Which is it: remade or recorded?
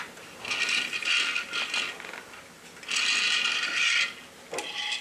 recorded